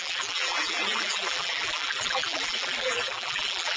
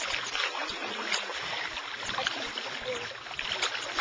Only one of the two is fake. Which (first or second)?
first